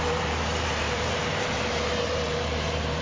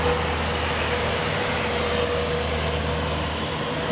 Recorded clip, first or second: second